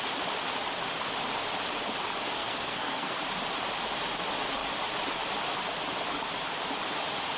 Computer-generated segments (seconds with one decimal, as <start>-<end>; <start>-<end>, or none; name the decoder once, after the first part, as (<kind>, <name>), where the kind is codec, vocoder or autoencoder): 2.4-3.2 (codec, SNAC)